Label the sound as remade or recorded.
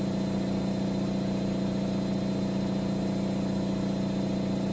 recorded